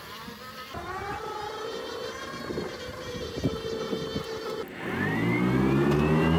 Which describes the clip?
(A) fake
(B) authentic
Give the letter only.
B